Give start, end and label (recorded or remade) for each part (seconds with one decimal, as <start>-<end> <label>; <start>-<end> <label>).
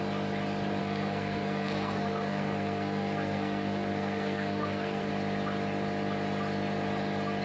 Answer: 0.0-0.8 recorded; 0.8-5.1 remade; 5.1-7.4 recorded